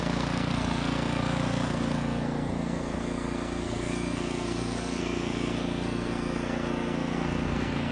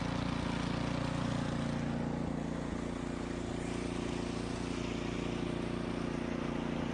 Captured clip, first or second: second